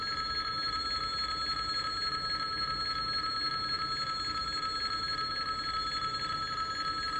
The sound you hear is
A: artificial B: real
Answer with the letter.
A